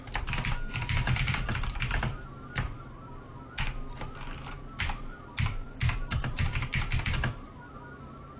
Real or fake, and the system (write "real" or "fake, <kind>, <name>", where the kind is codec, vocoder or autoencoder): real